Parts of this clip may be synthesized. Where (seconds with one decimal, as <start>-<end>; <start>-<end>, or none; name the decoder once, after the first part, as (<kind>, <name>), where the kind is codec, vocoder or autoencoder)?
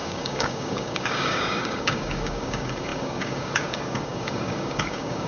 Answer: 0.0-5.3 (codec, DAC)